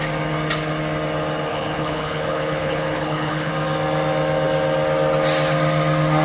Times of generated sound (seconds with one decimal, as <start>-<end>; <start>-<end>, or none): 1.5-3.5